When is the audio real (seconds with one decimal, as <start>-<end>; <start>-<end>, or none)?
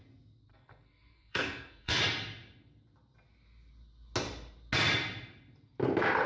0.0-0.5; 2.0-6.3